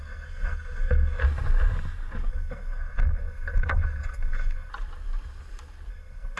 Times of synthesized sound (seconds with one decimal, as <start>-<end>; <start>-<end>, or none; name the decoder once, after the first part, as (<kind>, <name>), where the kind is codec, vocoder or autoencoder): 0.0-1.2 (codec, SNAC); 2.3-4.7; 5.9-6.4